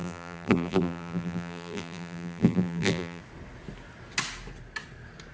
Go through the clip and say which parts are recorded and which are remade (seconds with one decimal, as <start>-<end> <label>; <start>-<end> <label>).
0.0-3.2 remade; 3.2-5.3 recorded